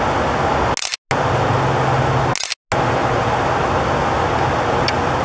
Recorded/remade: recorded